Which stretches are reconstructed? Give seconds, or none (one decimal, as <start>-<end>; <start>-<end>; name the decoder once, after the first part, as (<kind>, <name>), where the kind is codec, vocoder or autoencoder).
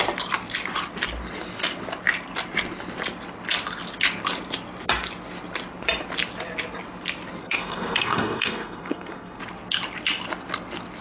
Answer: 7.4-9.4 (codec, SNAC)